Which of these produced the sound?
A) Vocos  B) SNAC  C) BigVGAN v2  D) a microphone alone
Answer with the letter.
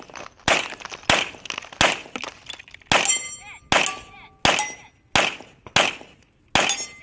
D